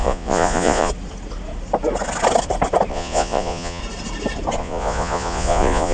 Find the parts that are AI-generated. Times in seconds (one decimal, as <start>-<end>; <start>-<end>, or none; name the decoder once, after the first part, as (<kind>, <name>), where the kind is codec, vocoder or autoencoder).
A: 0.0-0.9 (vocoder, Vocos); 2.9-3.8; 4.6-5.9